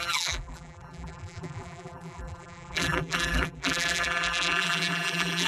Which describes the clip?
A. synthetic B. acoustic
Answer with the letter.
A